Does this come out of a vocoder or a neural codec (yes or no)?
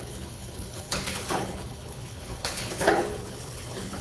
yes